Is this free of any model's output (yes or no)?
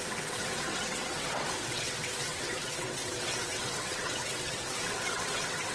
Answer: no